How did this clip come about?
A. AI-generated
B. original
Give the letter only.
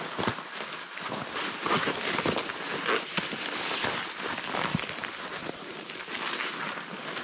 B